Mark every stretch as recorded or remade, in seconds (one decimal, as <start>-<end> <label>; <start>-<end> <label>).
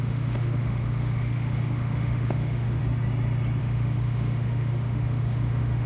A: 0.0-2.8 remade; 2.8-3.6 recorded; 3.6-5.9 remade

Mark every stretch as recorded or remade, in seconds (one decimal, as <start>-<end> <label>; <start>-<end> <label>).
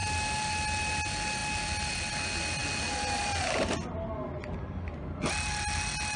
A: 0.0-6.2 recorded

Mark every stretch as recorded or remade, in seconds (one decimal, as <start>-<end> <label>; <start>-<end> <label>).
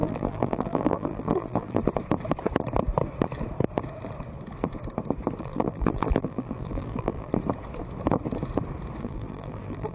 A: 0.0-1.8 remade; 1.8-5.4 recorded; 5.4-7.3 remade; 7.3-9.0 recorded; 9.0-9.9 remade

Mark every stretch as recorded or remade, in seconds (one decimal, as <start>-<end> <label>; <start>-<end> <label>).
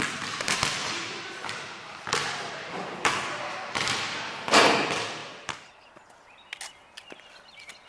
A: 0.0-0.8 recorded; 0.8-4.3 remade; 4.3-5.2 recorded; 5.2-6.5 remade; 6.5-7.9 recorded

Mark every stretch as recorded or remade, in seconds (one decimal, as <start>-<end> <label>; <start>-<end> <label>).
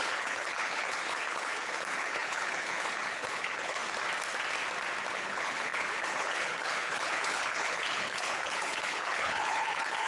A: 0.0-3.8 remade; 3.8-5.1 recorded; 5.1-10.1 remade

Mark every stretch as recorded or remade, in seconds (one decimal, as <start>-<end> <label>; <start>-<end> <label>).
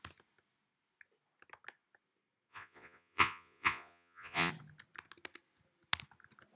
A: 0.0-2.5 recorded; 2.5-4.5 remade; 4.5-6.6 recorded